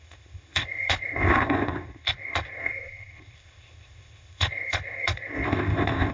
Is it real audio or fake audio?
fake